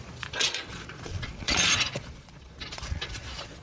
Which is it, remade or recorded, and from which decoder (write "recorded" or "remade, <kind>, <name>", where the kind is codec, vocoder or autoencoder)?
remade, vocoder, Vocos